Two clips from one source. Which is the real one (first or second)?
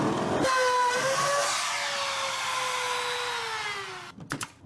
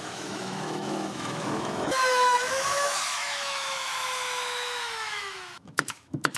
first